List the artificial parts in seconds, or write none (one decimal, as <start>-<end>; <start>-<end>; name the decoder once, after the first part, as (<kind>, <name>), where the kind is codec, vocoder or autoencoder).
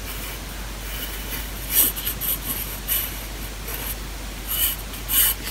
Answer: none